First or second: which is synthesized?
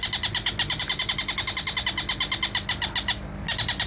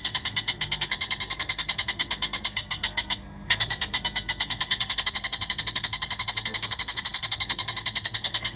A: second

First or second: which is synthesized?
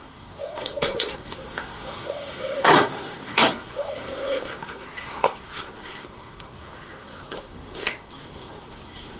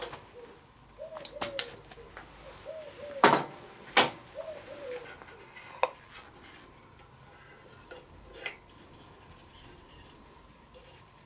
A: first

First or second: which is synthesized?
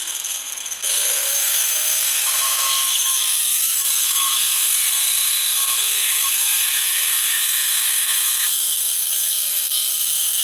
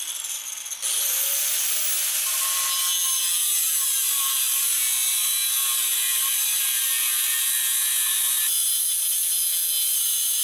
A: first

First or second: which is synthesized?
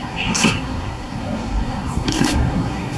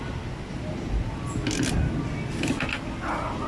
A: first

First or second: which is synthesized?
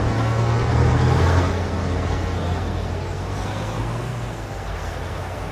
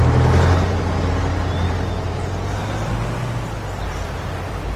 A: first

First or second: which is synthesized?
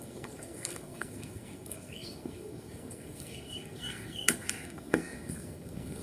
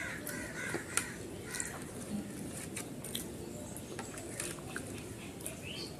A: first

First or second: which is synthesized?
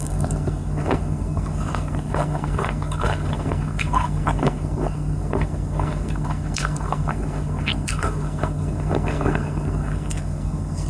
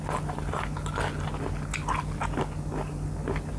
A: first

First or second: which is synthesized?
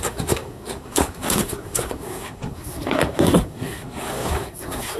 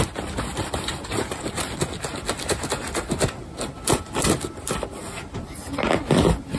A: first